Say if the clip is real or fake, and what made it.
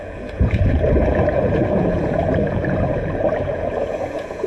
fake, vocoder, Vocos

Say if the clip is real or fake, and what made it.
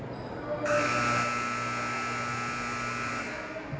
real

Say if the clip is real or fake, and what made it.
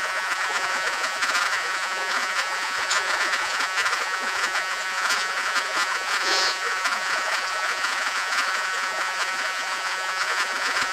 fake, vocoder, Vocos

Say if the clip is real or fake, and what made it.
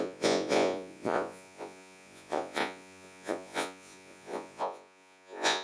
fake, vocoder, Vocos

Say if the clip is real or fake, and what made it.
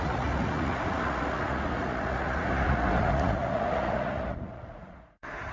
fake, vocoder, Vocos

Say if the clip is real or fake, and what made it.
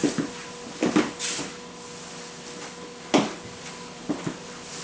real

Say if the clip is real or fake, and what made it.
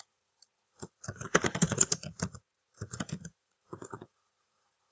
fake, vocoder, Vocos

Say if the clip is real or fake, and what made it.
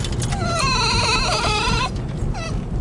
real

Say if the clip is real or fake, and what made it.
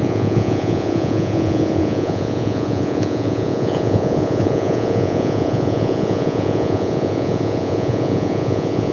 fake, vocoder, Vocos